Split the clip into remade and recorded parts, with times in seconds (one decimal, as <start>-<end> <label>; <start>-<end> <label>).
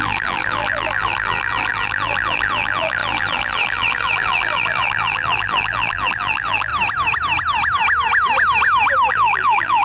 0.0-6.7 remade; 6.7-9.1 recorded; 9.1-9.8 remade